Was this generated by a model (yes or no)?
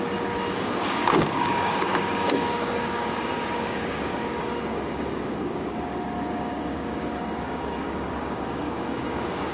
yes